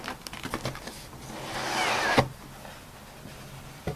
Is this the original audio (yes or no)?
yes